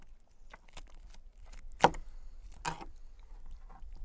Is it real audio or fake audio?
real